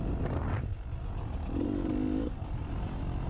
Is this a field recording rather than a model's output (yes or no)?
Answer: yes